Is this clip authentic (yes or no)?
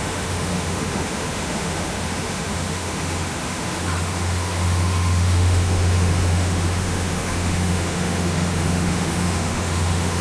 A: no